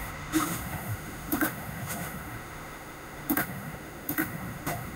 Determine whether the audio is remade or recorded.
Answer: remade